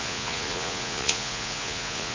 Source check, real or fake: fake